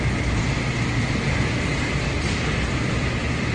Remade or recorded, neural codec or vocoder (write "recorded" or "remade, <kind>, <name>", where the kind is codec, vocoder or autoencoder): recorded